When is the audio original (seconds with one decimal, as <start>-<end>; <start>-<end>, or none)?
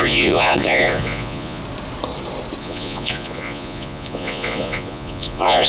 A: 1.6-2.6